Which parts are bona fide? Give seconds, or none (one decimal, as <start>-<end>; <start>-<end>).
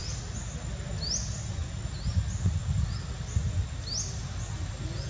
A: 0.0-5.1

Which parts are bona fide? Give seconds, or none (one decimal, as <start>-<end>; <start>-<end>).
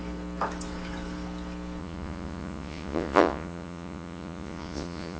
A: 0.0-1.8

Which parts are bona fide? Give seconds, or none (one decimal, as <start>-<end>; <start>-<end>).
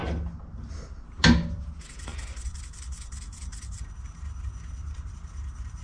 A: 0.0-5.8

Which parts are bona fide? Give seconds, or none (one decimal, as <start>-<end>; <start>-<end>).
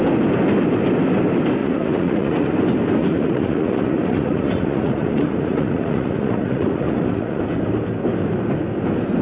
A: 0.0-1.6; 2.5-3.0; 7.4-9.2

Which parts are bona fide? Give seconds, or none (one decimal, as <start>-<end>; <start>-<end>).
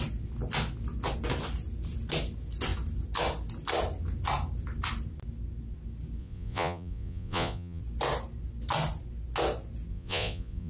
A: 0.0-6.2; 7.8-9.9